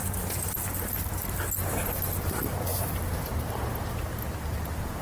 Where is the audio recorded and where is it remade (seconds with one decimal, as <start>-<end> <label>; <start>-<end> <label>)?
0.0-5.0 recorded